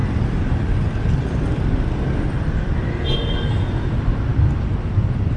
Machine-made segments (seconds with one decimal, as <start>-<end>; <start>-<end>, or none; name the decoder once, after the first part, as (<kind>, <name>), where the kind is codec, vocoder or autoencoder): none